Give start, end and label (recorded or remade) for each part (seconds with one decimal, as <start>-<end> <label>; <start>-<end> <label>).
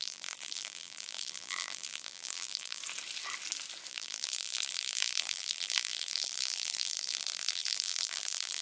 0.0-2.8 remade; 2.8-3.9 recorded; 3.9-8.6 remade